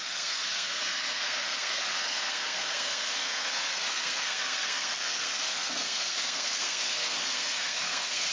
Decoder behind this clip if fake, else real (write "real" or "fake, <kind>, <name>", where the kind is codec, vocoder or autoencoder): fake, codec, SNAC